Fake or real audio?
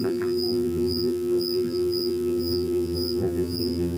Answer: fake